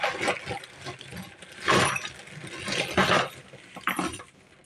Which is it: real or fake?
real